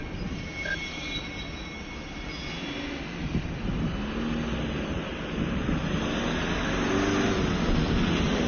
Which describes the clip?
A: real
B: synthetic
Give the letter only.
A